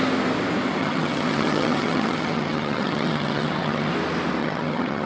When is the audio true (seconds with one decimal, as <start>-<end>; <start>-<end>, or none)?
0.0-0.8; 3.9-4.4